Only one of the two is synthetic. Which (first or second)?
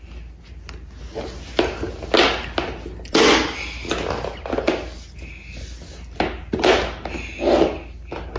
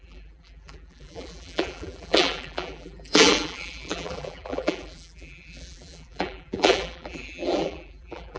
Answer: second